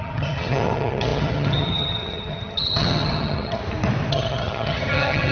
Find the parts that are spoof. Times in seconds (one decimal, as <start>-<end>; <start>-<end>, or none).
0.0-3.6; 4.1-5.3